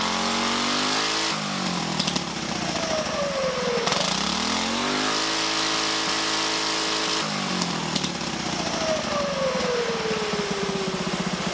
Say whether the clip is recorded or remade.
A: recorded